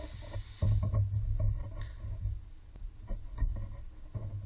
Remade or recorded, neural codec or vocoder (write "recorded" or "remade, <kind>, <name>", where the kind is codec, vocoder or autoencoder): recorded